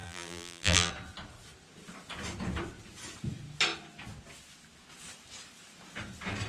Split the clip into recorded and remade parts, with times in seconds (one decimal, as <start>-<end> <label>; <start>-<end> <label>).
0.0-0.9 remade; 0.9-6.5 recorded